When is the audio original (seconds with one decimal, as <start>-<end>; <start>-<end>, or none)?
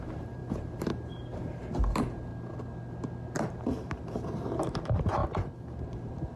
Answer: 2.3-3.5; 5.2-5.9